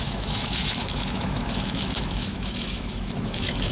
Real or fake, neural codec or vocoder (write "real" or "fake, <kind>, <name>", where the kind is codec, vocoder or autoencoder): fake, autoencoder, DAC-VAE